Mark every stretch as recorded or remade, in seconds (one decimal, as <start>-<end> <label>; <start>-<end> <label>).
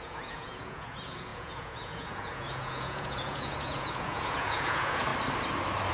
0.0-5.1 remade; 5.1-5.9 recorded